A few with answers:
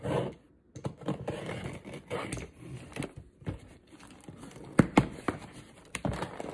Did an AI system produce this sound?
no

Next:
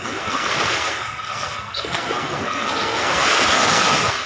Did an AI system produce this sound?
yes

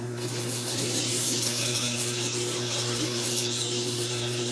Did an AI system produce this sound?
yes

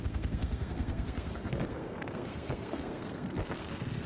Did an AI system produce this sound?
yes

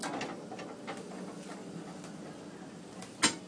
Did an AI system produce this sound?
no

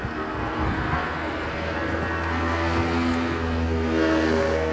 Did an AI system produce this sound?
yes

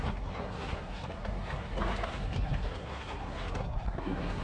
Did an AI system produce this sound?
yes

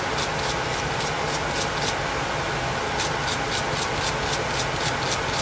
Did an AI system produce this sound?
no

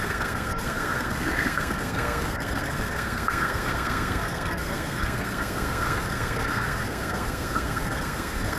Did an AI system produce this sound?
yes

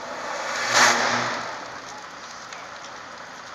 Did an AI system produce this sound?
no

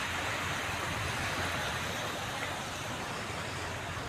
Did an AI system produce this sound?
no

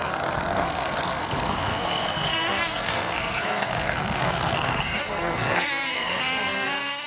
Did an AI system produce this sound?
yes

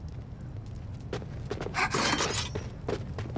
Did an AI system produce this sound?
no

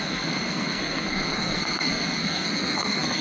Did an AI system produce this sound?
yes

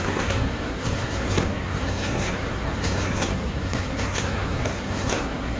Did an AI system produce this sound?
yes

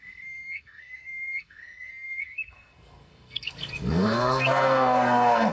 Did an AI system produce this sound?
yes